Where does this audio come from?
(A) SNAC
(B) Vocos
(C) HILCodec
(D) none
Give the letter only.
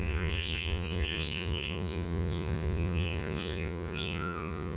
B